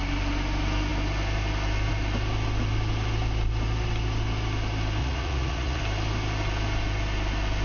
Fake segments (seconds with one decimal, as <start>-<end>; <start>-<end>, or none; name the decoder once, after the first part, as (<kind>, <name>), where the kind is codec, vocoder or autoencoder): 5.0-5.8 (vocoder, Vocos)